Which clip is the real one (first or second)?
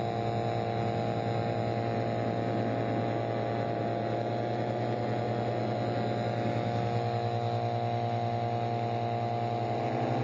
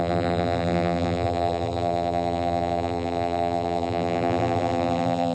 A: first